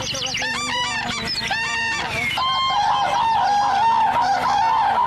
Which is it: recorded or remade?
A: recorded